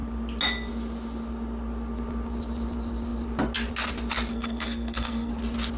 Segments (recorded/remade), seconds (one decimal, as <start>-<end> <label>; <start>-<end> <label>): 0.0-4.3 recorded; 4.3-5.3 remade; 5.3-5.8 recorded